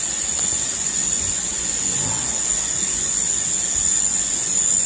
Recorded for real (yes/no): no